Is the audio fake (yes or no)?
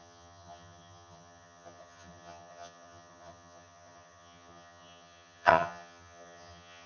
yes